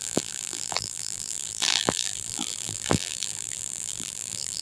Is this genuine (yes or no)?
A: no